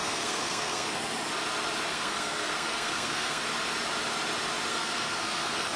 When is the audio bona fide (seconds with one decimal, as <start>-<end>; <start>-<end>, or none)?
1.0-1.9; 3.4-4.7